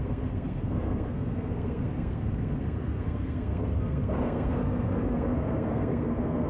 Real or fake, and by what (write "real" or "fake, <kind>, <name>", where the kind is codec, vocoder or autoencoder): fake, codec, SNAC